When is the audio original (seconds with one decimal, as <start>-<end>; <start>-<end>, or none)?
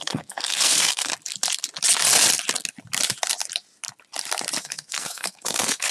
1.1-4.6